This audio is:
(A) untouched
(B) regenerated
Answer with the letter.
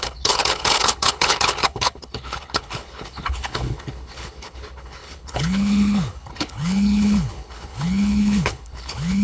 B